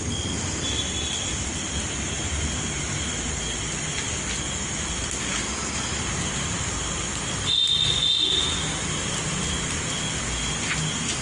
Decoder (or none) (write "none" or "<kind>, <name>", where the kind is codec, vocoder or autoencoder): none